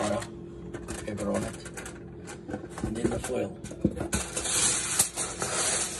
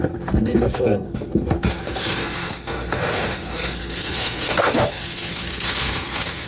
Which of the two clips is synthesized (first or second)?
second